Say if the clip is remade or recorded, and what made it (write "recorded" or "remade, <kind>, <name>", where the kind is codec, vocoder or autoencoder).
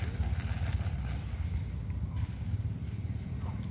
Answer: recorded